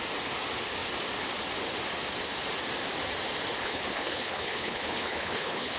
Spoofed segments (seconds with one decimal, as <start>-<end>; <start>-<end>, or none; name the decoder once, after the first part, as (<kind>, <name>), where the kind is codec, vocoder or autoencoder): 3.6-5.8 (codec, HILCodec)